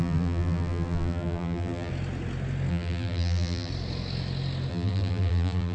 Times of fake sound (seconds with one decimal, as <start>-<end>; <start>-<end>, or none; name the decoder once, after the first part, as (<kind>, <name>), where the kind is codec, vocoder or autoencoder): 0.0-1.9 (vocoder, BigVGAN v2); 2.7-3.7; 4.7-5.7